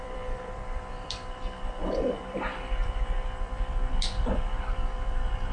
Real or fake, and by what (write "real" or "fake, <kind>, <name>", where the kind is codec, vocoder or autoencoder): fake, vocoder, BigVGAN v2